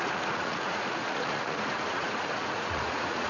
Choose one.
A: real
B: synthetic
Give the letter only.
B